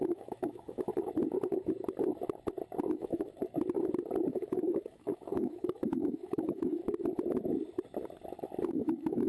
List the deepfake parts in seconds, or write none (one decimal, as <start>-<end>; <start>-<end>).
0.0-0.9; 2.9-3.4; 4.3-6.8; 8.7-9.3